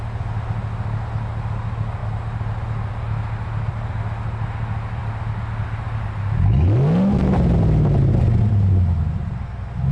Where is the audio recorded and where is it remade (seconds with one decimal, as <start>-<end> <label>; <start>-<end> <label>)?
0.0-9.9 recorded